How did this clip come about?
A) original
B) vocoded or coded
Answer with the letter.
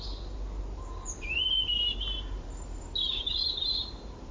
A